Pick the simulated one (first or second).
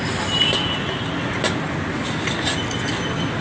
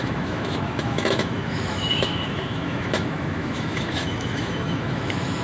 second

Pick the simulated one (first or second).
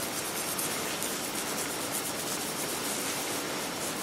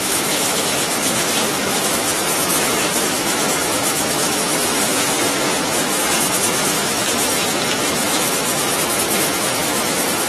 second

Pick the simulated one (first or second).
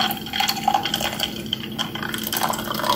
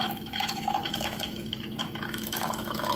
second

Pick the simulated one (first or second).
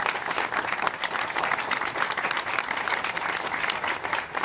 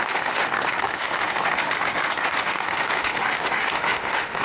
second